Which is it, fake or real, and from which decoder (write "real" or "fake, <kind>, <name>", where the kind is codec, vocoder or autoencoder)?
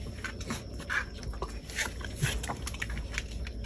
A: real